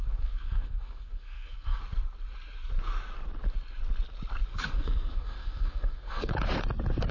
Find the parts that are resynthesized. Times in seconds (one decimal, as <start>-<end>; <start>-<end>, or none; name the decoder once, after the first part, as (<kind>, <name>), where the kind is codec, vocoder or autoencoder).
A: 0.0-1.8 (codec, SNAC); 4.5-6.3